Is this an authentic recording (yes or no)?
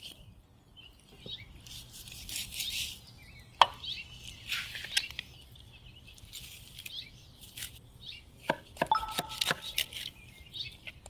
yes